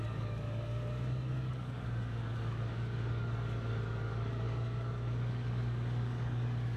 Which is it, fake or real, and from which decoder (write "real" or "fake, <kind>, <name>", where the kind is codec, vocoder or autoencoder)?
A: fake, codec, DAC